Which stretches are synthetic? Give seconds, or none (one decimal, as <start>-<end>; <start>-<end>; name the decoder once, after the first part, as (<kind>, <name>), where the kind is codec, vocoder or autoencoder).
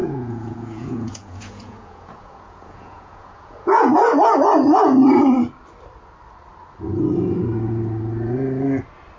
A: 0.0-3.9 (vocoder, Vocos)